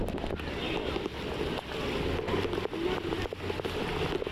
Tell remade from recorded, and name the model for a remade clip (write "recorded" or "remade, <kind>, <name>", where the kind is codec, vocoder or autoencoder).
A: recorded